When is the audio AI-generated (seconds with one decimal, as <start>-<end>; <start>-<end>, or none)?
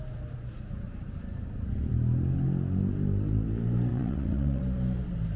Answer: 3.9-4.6